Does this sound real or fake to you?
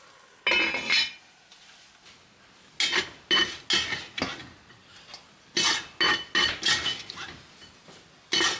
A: real